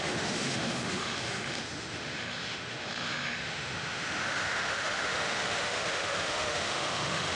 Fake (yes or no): yes